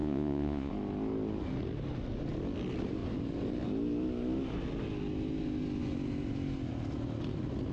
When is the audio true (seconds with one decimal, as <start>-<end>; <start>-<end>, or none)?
0.7-7.7